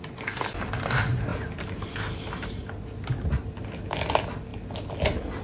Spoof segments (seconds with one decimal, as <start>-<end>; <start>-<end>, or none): none